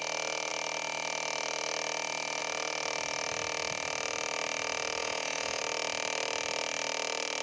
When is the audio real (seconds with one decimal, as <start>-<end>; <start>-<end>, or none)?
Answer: 0.0-5.0; 5.6-7.4